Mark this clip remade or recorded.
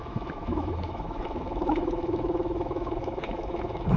remade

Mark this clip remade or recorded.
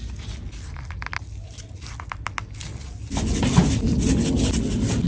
recorded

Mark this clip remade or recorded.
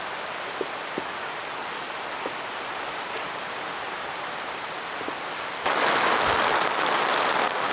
recorded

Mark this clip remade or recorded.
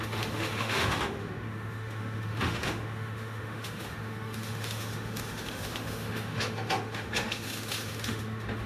remade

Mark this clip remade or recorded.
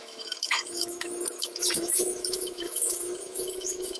remade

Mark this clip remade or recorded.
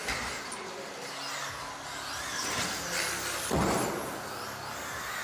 recorded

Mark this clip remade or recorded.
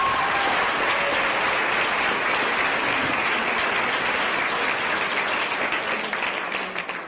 recorded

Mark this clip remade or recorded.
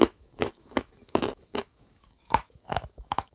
remade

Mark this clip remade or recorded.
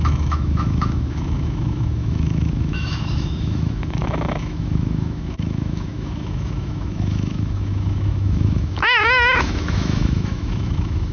remade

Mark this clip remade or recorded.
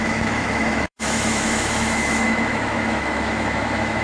remade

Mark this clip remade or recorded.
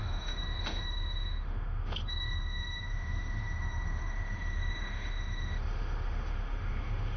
remade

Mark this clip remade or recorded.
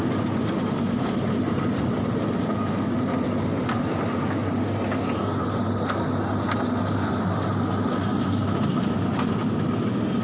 recorded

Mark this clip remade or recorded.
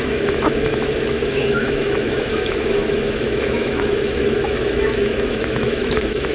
remade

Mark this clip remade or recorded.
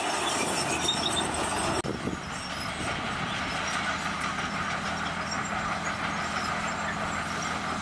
recorded